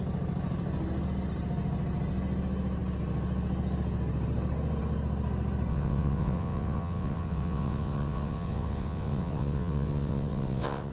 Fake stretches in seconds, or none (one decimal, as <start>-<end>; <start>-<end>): 5.7-10.9